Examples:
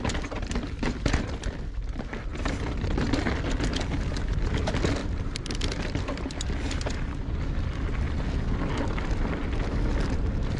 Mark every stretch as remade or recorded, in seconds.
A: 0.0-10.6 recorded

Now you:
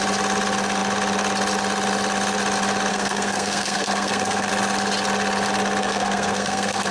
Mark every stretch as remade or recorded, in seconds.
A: 0.0-2.9 recorded; 2.9-4.5 remade; 4.5-5.8 recorded; 5.8-6.9 remade

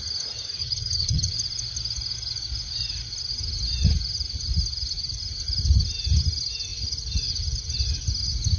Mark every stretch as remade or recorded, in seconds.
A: 0.0-0.6 recorded; 0.6-1.3 remade; 1.3-8.6 recorded